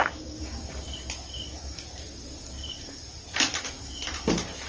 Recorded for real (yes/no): yes